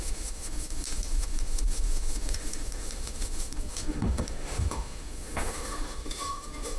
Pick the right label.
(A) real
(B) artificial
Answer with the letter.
B